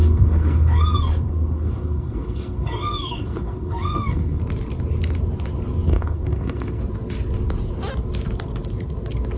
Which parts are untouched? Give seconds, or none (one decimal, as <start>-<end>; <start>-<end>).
4.4-5.9; 6.8-9.4